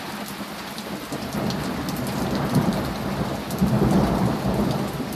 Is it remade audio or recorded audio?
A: recorded